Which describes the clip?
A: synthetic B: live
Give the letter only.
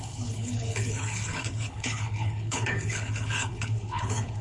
A